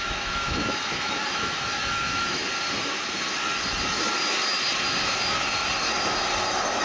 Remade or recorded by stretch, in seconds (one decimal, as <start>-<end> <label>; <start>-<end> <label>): 0.0-2.4 remade; 2.4-6.8 recorded